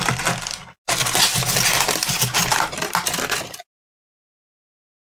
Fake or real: real